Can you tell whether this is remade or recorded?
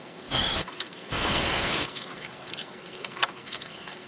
remade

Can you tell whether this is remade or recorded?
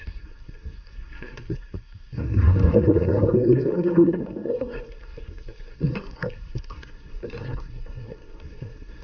remade